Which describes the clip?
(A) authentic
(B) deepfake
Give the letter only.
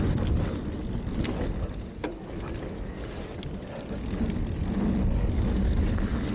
A